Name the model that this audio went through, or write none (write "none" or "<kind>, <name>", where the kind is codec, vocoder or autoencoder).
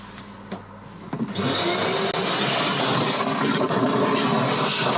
none